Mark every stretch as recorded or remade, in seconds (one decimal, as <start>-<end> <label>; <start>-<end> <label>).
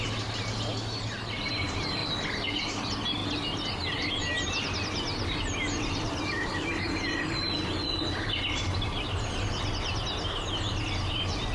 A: 0.0-11.5 recorded